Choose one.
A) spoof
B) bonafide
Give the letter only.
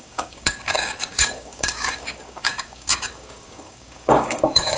A